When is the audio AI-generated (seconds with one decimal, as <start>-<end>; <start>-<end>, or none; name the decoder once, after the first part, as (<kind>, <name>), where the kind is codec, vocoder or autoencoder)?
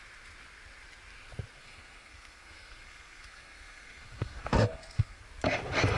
1.6-5.2 (codec, SNAC)